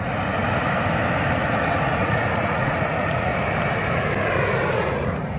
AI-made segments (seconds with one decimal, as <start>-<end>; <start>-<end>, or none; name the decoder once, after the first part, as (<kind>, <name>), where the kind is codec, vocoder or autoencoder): 0.0-0.4 (vocoder, Vocos); 1.3-3.3; 4.5-5.4